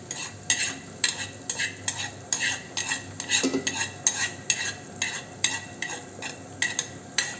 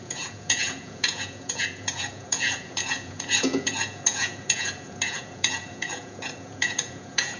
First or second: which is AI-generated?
second